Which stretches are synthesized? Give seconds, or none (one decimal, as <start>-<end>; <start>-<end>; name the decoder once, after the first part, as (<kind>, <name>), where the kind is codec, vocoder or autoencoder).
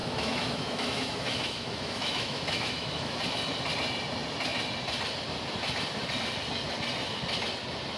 0.0-3.2 (autoencoder, DAC-VAE)